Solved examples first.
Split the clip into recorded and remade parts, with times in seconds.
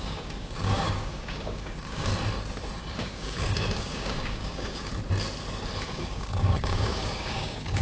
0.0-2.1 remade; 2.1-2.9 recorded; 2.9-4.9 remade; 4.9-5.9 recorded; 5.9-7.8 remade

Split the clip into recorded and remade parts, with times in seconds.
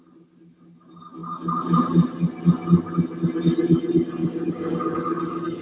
0.0-4.2 recorded; 4.2-5.6 remade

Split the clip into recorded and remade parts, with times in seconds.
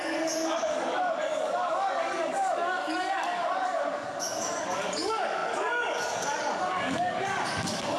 0.0-8.0 remade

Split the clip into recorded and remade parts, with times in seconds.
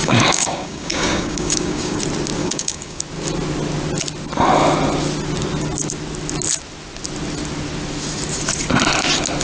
0.0-2.0 remade; 2.0-2.4 recorded; 2.4-3.0 remade; 3.0-9.4 recorded